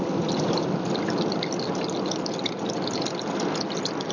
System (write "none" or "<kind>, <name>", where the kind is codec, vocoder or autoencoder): none